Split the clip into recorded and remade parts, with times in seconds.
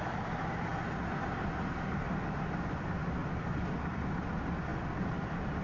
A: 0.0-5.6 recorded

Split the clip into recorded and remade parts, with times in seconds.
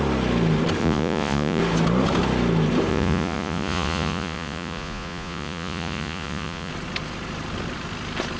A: 0.0-0.8 recorded; 0.8-1.6 remade; 1.6-2.9 recorded; 2.9-6.7 remade; 6.7-8.4 recorded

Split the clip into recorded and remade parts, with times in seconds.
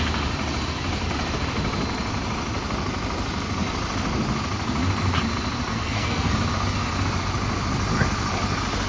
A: 0.0-5.7 recorded; 5.7-6.3 remade; 6.3-8.9 recorded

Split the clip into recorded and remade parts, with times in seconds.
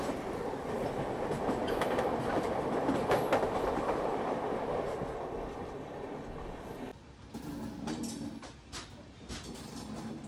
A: 0.0-10.3 recorded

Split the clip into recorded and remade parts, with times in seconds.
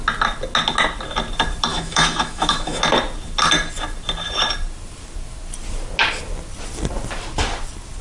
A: 0.0-1.7 recorded; 1.7-2.8 remade; 2.8-8.0 recorded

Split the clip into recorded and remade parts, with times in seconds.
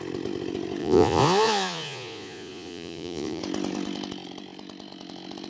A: 0.0-0.8 recorded; 0.8-3.4 remade; 3.4-5.5 recorded